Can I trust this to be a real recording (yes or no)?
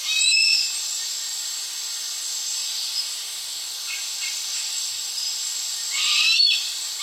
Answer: yes